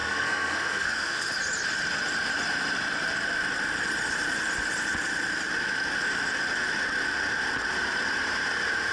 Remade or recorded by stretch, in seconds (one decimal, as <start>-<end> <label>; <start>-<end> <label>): 0.0-1.3 remade; 1.3-8.9 recorded